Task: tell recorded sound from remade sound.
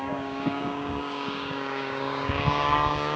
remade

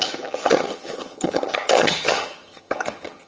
remade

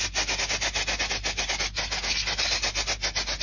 recorded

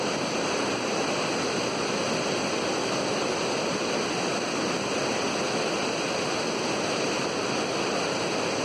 recorded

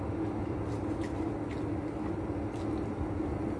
recorded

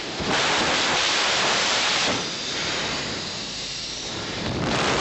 remade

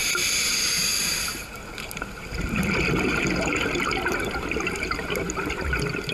recorded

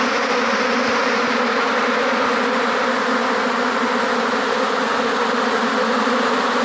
recorded